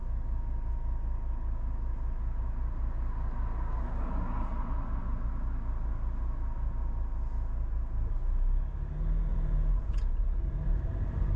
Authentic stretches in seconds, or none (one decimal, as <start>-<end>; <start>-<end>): 0.0-9.3; 10.1-11.4